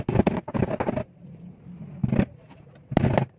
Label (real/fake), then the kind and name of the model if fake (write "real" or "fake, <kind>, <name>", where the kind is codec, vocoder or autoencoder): real